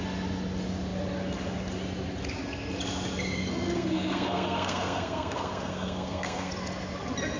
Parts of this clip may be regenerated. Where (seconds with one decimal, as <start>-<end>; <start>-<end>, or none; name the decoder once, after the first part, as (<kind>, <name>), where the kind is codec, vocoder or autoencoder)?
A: 3.5-6.5 (codec, SNAC)